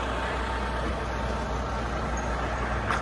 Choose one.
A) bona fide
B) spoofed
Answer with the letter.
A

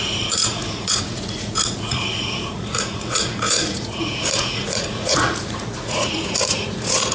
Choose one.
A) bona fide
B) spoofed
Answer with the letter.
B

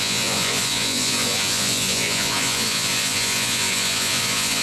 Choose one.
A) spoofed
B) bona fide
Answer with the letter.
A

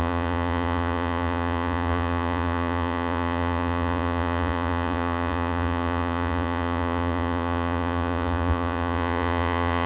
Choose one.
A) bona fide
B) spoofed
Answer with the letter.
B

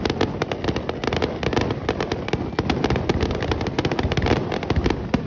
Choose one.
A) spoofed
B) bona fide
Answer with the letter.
B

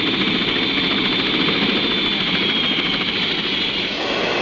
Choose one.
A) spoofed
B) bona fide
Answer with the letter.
B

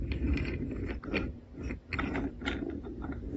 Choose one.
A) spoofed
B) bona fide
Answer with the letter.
B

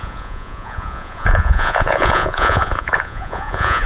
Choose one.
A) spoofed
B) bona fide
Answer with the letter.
A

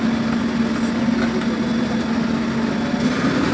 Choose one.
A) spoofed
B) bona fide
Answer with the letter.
B